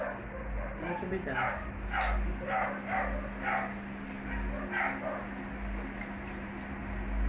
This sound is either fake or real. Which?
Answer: real